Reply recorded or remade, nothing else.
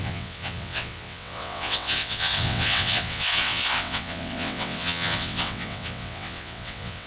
remade